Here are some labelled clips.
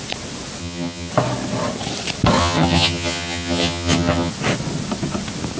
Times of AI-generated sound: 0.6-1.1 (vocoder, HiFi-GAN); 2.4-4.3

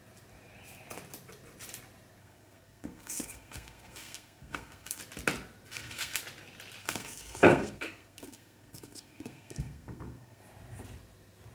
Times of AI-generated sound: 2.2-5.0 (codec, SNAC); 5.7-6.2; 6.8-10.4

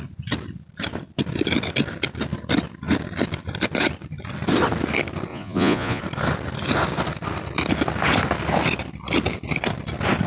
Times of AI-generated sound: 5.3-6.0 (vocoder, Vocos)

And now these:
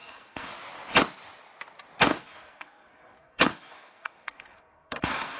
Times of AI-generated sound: 0.0-0.5 (codec, SNAC); 2.1-5.4

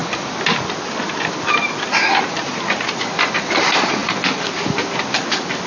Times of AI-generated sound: none